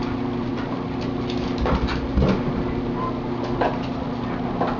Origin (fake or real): real